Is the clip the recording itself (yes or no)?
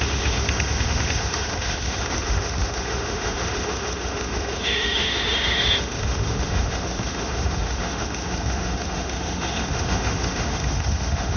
no